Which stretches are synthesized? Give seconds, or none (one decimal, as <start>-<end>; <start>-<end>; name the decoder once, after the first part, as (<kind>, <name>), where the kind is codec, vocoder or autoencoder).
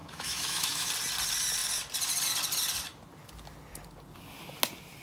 0.0-0.9 (autoencoder, DAC-VAE)